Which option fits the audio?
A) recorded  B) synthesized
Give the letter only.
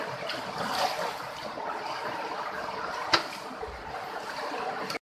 A